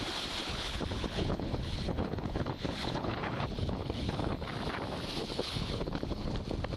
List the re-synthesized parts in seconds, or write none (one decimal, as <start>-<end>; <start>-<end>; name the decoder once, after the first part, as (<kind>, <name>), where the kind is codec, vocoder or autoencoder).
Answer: 0.4-4.5 (codec, HILCodec); 5.2-6.3